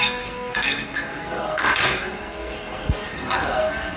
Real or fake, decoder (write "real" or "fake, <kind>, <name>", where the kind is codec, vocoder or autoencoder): fake, codec, SNAC